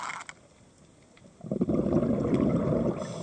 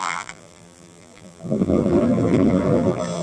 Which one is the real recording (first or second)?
first